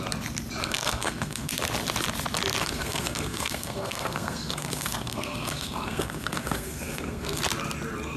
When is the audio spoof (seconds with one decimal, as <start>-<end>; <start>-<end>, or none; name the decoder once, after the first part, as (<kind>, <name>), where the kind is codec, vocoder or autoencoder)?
0.6-1.5 (codec, SNAC); 2.6-7.4